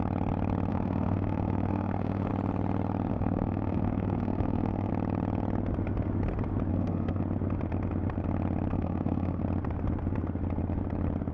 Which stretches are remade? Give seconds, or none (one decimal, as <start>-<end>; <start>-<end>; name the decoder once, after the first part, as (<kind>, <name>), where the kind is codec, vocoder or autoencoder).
0.7-2.3 (codec, SNAC); 3.1-4.9; 6.7-7.2; 8.7-9.4